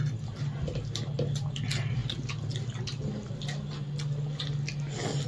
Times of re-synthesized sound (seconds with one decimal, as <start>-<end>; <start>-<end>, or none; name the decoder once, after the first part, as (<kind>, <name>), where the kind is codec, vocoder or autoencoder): none